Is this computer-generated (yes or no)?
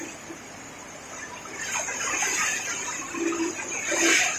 no